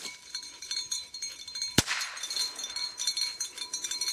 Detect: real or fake fake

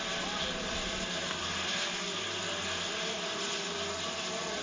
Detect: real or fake real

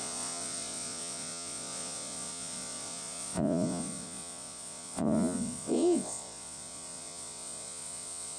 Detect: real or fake fake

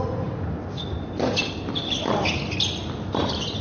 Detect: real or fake real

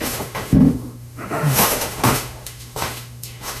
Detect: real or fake fake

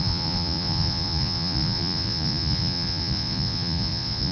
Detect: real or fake fake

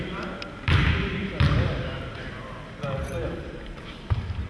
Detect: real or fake fake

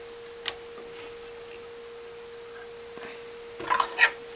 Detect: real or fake real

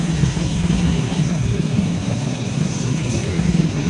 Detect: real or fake fake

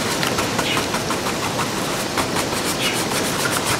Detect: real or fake fake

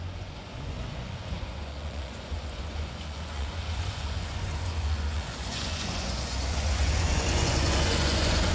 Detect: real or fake fake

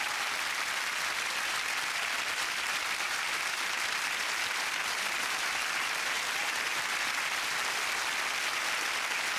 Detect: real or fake real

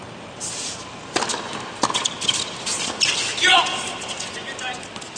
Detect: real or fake real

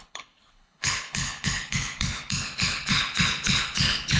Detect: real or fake fake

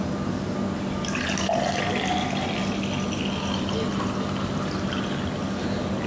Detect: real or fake real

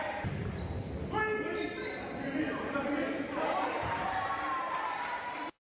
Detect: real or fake fake